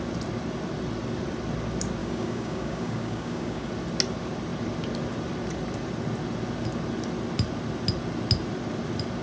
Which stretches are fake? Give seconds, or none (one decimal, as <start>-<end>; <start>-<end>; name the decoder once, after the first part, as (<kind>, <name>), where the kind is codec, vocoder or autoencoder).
2.0-3.7 (codec, DAC)